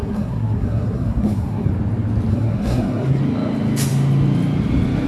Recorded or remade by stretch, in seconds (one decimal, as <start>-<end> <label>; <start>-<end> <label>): 0.0-1.7 remade; 1.7-2.3 recorded; 2.3-3.2 remade; 3.2-5.1 recorded